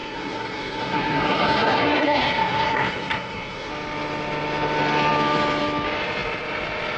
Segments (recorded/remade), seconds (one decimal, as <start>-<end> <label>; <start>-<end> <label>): 0.0-3.7 remade; 3.7-7.0 recorded